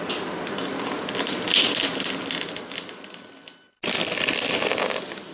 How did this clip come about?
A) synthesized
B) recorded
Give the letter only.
B